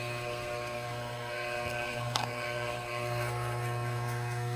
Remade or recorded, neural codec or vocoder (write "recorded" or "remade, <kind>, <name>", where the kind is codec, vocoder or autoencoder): remade, codec, SNAC